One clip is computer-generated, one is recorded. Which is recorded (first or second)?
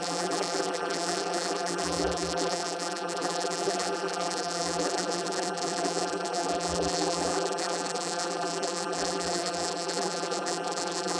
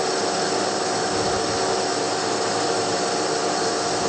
second